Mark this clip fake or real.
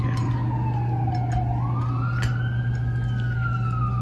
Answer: real